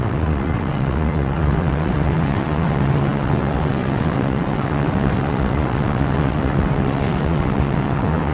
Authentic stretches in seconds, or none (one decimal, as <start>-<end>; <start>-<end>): none

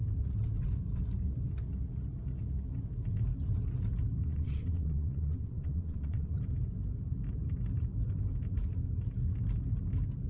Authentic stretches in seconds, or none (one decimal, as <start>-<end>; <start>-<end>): 0.0-4.2; 6.4-10.3